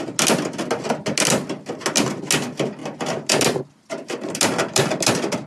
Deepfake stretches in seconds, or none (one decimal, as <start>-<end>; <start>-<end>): none